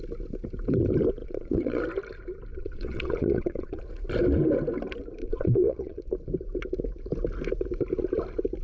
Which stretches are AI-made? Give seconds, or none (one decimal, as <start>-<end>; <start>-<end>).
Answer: 1.2-1.8; 2.5-3.8; 5.2-6.1